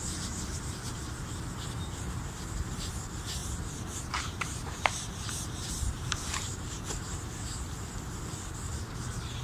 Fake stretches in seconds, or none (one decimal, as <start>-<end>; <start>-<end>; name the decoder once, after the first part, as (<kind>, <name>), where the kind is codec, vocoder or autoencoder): 3.4-7.9 (vocoder, BigVGAN v2)